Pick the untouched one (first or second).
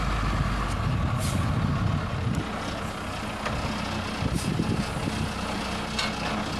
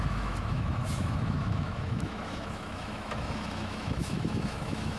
first